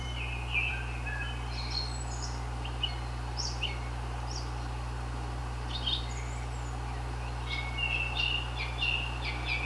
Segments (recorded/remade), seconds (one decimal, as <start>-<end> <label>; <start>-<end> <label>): 0.0-9.7 recorded